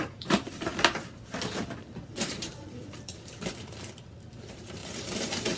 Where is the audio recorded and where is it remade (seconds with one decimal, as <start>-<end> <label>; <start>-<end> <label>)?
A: 0.0-0.7 remade; 0.7-2.2 recorded; 2.2-5.6 remade